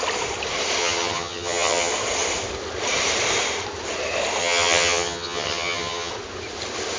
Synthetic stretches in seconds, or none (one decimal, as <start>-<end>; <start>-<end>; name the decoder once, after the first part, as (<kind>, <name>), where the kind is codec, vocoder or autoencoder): 0.8-1.9 (vocoder, HiFi-GAN); 4.4-6.1